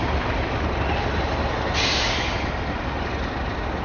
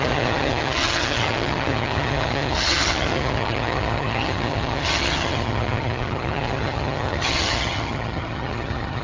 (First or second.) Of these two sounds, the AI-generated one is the second